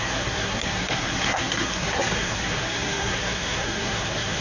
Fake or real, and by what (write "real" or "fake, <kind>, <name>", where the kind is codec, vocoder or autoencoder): fake, codec, SNAC